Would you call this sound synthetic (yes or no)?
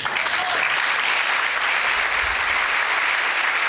no